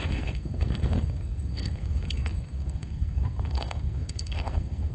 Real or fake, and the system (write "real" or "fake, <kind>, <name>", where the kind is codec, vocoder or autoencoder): fake, codec, SNAC